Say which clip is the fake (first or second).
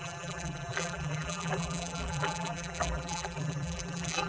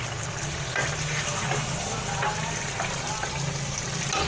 first